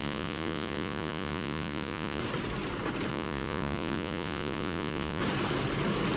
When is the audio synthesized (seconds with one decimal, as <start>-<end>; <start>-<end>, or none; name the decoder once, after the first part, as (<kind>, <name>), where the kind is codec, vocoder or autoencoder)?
0.0-2.2 (vocoder, Vocos); 3.1-5.2